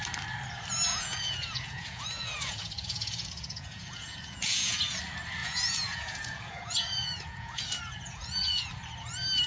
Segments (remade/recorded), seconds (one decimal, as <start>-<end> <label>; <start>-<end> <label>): 0.0-0.9 recorded; 0.9-5.0 remade; 5.0-5.4 recorded; 5.4-8.7 remade; 8.7-9.5 recorded